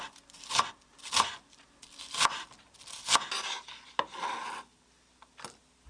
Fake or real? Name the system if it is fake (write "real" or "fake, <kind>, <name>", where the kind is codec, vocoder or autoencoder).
real